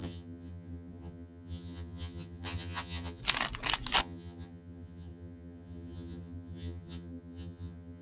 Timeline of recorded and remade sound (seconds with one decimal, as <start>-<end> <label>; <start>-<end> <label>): 0.0-3.2 remade; 3.2-4.0 recorded; 4.0-8.0 remade